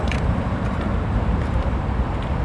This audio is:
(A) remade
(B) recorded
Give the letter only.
A